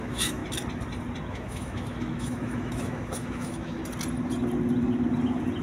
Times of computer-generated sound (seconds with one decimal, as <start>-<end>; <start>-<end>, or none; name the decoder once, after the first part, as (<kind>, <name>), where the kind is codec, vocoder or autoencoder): 0.0-0.4 (autoencoder, DAC-VAE); 1.3-3.8